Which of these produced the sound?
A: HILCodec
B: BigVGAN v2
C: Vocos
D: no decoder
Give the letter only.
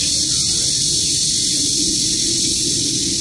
D